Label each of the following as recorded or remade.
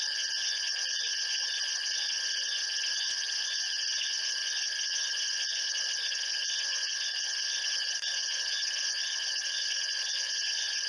remade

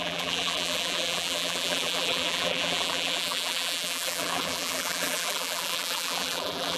remade